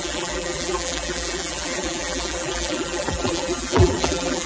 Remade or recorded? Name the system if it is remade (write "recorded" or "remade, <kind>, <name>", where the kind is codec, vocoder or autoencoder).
remade, vocoder, BigVGAN v2